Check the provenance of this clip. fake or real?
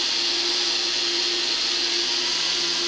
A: real